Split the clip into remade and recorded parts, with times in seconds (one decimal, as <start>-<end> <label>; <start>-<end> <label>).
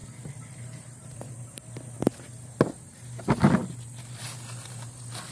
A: 0.0-1.3 remade; 1.3-3.6 recorded; 3.6-4.2 remade; 4.2-5.3 recorded